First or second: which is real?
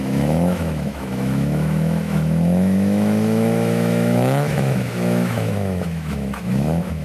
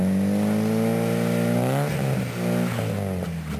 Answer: second